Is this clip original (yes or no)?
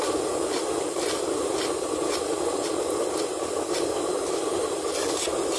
yes